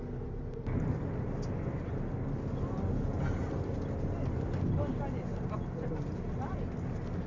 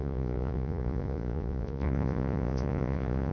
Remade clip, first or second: second